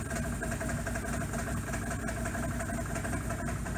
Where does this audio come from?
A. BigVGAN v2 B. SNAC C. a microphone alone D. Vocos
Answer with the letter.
C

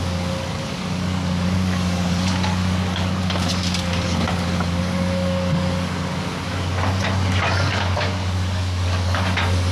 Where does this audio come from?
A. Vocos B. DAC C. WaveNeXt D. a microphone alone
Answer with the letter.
B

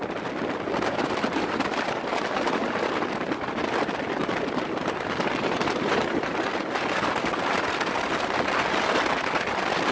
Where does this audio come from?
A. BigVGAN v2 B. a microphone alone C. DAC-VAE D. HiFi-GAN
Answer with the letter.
B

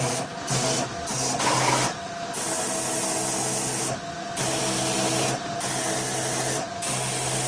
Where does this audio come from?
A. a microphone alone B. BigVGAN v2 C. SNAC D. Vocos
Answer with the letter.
A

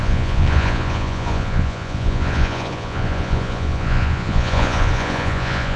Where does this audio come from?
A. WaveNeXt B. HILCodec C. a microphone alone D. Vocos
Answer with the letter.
D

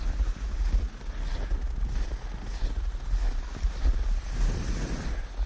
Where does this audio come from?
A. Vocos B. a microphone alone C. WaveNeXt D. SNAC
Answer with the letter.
B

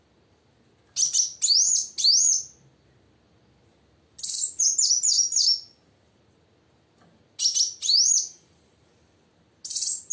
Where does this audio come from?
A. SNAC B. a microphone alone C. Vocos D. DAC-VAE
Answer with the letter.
B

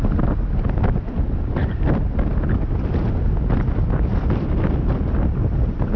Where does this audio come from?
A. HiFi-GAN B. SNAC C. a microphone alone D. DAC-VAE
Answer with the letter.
C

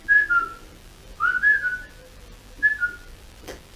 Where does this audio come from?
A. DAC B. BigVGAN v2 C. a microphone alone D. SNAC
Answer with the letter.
B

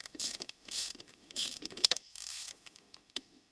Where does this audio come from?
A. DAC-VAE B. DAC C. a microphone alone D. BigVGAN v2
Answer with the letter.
A